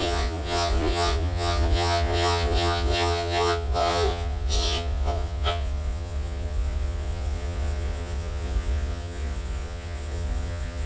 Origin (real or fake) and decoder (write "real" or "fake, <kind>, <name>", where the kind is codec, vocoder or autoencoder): fake, vocoder, Vocos